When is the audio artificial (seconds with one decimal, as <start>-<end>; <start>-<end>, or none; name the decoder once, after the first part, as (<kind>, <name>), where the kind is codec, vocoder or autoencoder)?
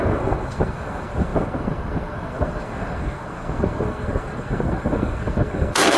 0.0-6.0 (codec, SNAC)